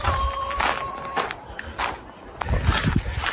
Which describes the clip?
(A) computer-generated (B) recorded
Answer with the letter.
B